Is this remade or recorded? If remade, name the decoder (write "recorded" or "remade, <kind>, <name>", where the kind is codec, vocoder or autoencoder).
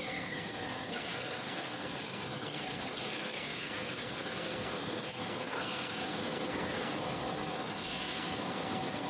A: remade, codec, SNAC